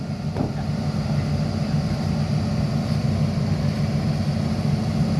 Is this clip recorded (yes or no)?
yes